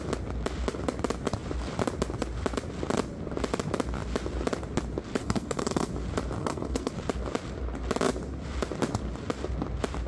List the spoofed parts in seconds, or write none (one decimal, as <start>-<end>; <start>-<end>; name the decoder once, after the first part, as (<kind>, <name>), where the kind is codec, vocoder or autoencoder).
5.2-5.9 (codec, SNAC); 6.4-6.9